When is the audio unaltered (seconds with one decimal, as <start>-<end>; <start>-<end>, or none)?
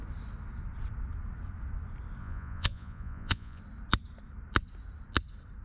0.0-2.2; 3.6-5.6